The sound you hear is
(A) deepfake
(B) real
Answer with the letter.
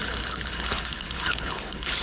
A